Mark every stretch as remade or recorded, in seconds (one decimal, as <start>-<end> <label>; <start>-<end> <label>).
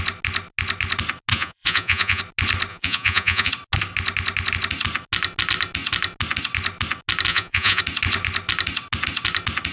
0.0-1.3 recorded; 1.3-2.2 remade; 2.2-2.7 recorded; 2.7-3.5 remade; 3.5-7.3 recorded; 7.3-7.8 remade; 7.8-9.7 recorded